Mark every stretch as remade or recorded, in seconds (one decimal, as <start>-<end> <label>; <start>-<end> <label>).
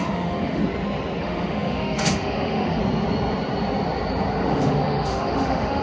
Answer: 0.0-0.6 remade; 0.6-1.2 recorded; 1.2-2.8 remade; 2.8-4.5 recorded; 4.5-5.8 remade